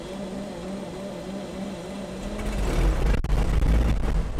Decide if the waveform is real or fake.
real